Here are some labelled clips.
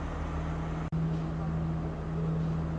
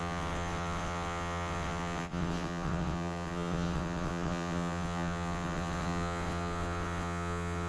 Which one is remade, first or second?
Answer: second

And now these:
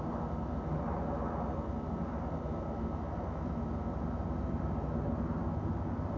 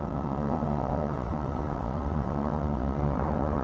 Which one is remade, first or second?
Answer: second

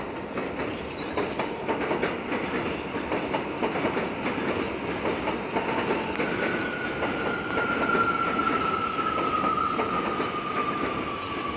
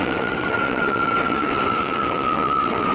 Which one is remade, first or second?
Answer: second